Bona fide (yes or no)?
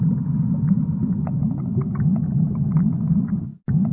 yes